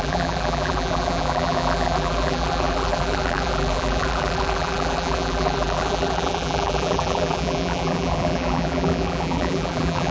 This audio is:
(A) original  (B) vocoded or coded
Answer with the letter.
B